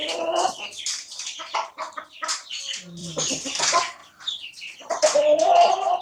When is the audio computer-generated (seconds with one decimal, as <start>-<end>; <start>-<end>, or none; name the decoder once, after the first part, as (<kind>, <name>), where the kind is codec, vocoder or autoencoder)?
0.0-2.5 (vocoder, BigVGAN v2); 3.0-3.6; 4.0-4.9